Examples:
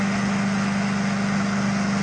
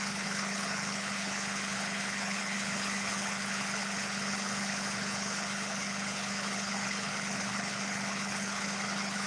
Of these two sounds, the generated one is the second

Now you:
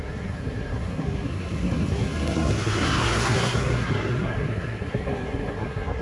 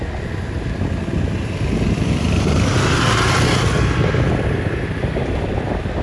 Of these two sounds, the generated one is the first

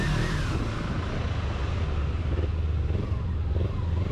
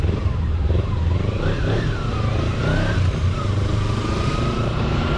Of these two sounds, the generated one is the second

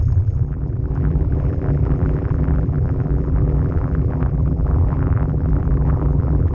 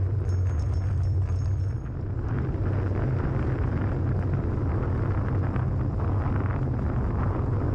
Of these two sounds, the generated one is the first